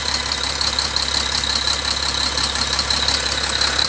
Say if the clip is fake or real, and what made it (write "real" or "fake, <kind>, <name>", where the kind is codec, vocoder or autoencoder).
fake, vocoder, BigVGAN v2